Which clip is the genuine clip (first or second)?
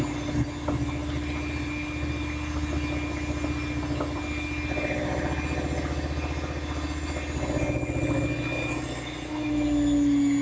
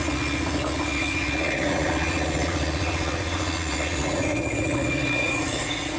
first